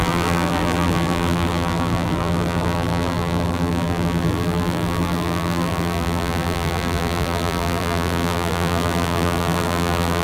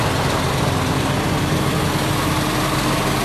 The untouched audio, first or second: second